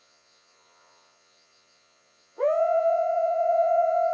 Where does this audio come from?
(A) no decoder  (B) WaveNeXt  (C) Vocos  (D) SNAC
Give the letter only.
C